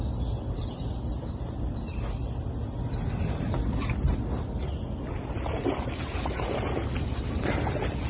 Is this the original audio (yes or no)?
yes